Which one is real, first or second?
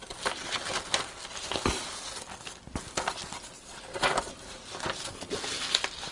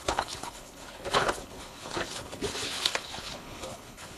first